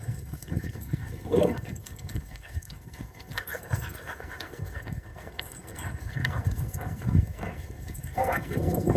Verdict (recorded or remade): remade